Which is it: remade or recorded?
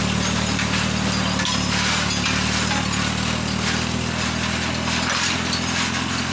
recorded